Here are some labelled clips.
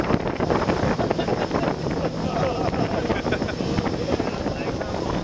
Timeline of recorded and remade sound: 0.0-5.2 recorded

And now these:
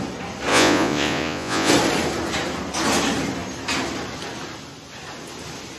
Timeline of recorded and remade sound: 0.0-0.5 recorded; 0.5-1.7 remade; 1.7-5.8 recorded

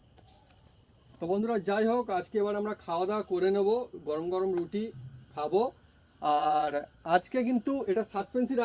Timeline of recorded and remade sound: 0.0-1.4 remade; 1.4-6.3 recorded; 6.3-8.2 remade; 8.2-8.6 recorded

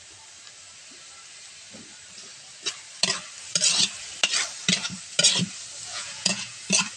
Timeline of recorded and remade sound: 0.0-5.9 recorded; 5.9-6.6 remade; 6.6-7.0 recorded

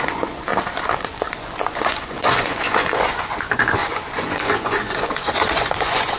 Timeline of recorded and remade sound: 0.0-0.5 remade; 0.5-1.0 recorded; 1.0-6.2 remade